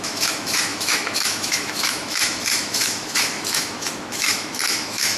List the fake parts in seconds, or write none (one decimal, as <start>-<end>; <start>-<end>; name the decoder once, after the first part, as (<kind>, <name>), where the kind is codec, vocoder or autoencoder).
0.0-5.2 (autoencoder, DAC-VAE)